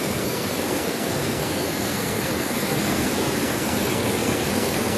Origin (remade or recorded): remade